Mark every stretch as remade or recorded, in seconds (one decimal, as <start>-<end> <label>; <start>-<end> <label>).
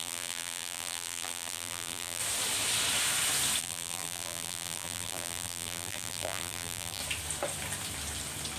0.0-2.2 remade; 2.2-3.6 recorded; 3.6-7.0 remade; 7.0-8.6 recorded